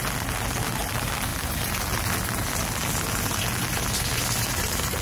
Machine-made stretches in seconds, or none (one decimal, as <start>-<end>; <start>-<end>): none